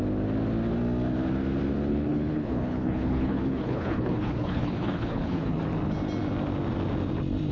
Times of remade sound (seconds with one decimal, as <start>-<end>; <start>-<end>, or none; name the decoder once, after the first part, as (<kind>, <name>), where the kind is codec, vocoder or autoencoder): 1.9-5.6 (codec, HILCodec)